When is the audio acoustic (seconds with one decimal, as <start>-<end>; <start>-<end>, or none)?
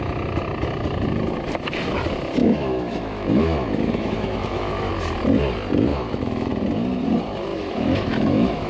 0.0-2.4; 4.9-5.9; 6.5-7.5